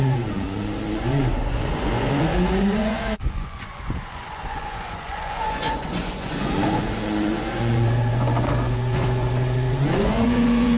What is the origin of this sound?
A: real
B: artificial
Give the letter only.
B